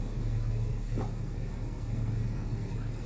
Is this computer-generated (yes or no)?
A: yes